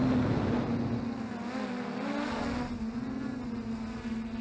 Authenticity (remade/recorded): recorded